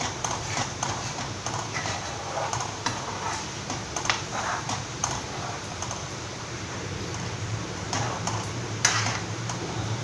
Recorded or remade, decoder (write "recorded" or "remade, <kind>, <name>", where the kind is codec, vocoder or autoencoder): remade, vocoder, BigVGAN v2